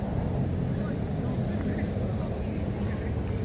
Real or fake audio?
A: real